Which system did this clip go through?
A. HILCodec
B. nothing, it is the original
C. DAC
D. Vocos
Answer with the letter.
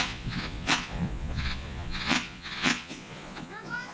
D